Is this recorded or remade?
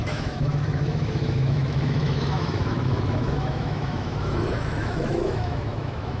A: remade